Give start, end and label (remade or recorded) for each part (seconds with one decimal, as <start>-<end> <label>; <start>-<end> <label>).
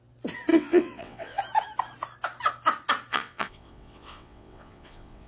0.0-0.5 recorded; 0.5-1.4 remade; 1.4-3.1 recorded; 3.1-5.3 remade